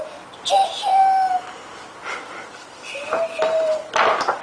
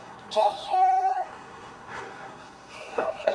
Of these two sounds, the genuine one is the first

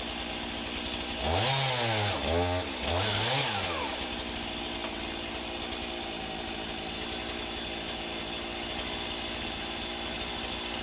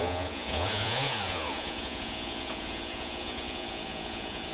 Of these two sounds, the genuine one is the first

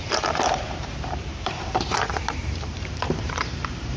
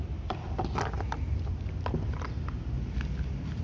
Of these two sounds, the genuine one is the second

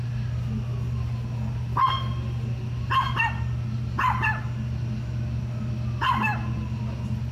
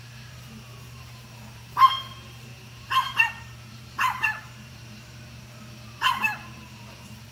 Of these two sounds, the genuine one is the first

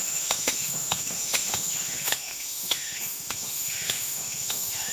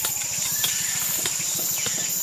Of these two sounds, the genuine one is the second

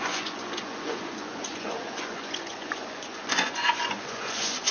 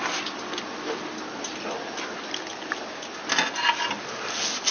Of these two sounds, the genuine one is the second